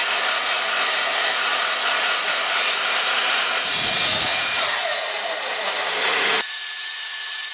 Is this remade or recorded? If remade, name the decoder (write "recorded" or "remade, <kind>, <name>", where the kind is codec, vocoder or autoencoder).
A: remade, vocoder, Vocos